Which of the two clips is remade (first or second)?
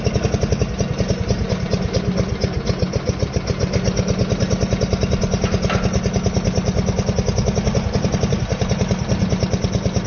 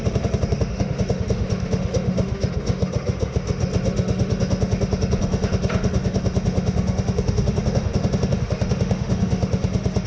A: second